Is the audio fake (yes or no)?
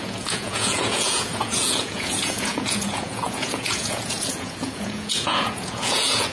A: yes